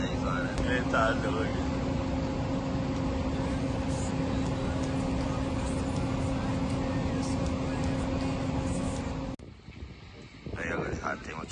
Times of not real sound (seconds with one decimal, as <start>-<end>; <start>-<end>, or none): none